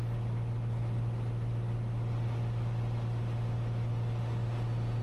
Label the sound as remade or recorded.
recorded